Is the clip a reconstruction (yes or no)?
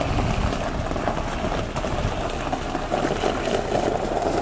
no